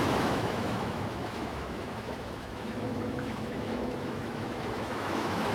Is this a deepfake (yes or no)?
yes